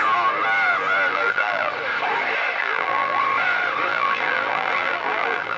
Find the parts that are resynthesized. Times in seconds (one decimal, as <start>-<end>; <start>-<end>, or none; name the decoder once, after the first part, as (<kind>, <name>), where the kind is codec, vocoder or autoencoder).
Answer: 1.1-1.7 (vocoder, BigVGAN v2); 2.6-3.2; 3.9-5.6